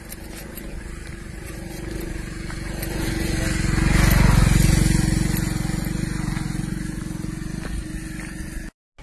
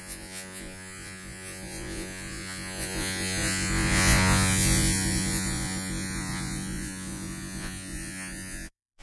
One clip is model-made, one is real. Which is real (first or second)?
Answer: first